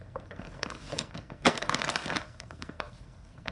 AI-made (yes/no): yes